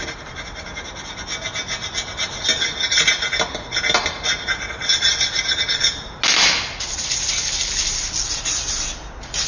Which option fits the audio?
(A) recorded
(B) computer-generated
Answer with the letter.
A